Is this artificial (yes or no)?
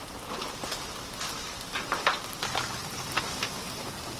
no